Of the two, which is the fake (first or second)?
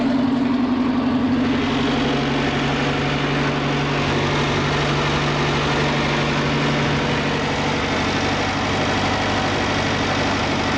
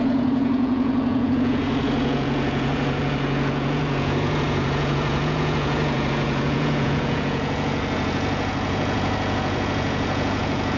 second